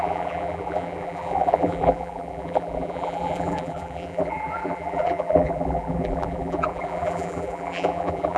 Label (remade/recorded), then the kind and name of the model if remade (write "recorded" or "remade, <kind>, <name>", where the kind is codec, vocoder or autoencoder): remade, vocoder, BigVGAN v2